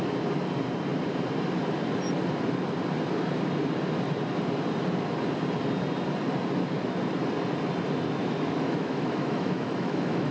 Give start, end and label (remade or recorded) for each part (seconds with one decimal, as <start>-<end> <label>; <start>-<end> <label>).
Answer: 0.0-8.2 recorded; 8.2-10.3 remade